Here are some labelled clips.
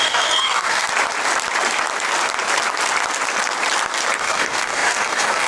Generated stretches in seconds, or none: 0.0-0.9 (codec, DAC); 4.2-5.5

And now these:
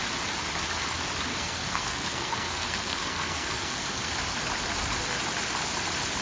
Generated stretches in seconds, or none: 1.3-4.1 (codec, SNAC)

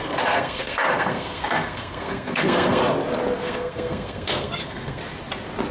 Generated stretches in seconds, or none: 0.0-2.8 (codec, SNAC); 3.4-5.0

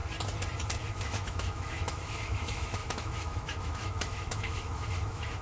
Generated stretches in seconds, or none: 0.9-5.4 (autoencoder, DAC-VAE)